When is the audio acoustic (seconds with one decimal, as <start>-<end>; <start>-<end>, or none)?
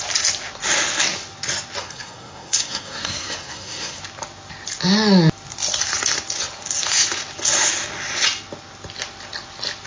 0.0-1.8; 4.0-9.9